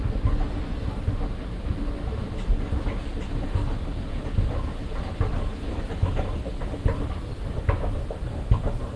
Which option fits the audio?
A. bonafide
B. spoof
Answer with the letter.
A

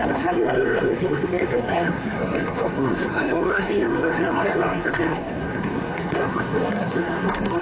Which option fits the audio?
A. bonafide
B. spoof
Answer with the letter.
B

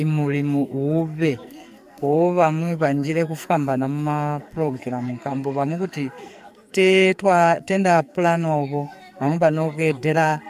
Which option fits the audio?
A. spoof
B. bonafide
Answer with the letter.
A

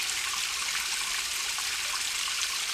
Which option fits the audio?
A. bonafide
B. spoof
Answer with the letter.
A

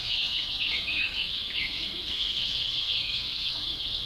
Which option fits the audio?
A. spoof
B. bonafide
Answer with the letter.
A